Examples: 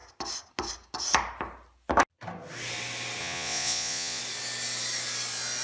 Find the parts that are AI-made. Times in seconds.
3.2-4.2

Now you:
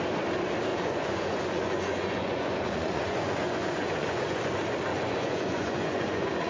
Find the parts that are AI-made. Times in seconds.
0.7-4.4; 4.9-6.5

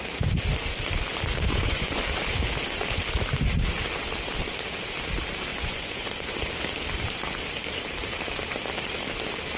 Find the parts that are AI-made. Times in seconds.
1.5-2.0; 5.5-6.4

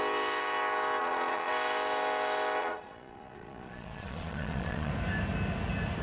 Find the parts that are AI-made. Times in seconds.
1.0-1.5; 2.6-4.9

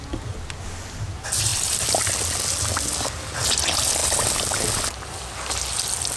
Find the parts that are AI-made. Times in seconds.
none

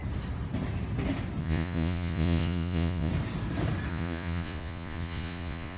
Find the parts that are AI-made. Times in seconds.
1.4-3.1; 3.9-5.8

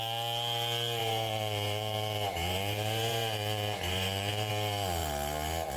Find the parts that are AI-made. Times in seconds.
1.0-4.5